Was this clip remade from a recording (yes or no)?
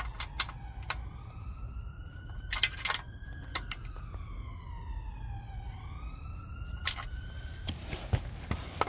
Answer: no